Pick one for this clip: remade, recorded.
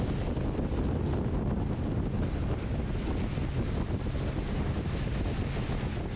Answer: recorded